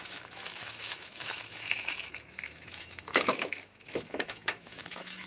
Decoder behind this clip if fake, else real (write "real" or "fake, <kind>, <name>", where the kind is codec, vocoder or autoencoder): fake, autoencoder, DAC-VAE